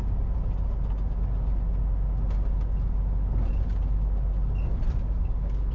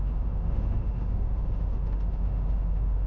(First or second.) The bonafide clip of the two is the first